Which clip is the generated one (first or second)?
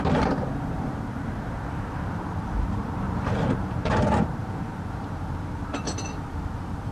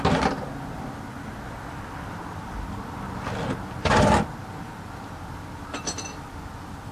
first